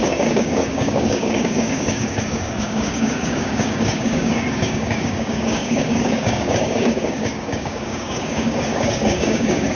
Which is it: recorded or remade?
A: remade